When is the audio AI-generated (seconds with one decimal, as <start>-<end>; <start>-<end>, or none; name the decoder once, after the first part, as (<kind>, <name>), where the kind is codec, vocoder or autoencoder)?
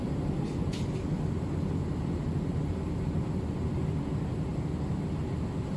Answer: 4.5-5.3 (vocoder, BigVGAN v2)